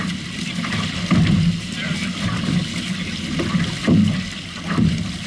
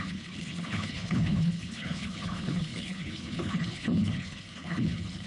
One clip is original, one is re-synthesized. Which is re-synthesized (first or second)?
second